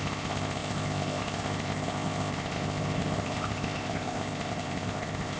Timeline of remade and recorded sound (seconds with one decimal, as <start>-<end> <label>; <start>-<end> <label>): 0.0-5.4 remade